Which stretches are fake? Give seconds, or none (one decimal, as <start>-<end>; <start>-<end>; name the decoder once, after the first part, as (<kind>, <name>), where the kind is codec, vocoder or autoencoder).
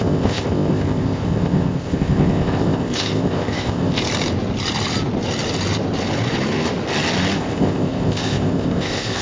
0.0-4.0 (codec, ZipCodec); 7.4-9.2